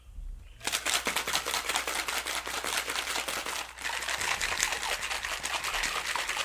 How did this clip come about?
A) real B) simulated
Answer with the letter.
A